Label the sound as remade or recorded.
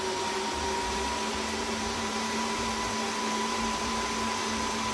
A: remade